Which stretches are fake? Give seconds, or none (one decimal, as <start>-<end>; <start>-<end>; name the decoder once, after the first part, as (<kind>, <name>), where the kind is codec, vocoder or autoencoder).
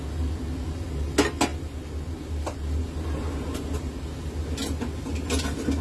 none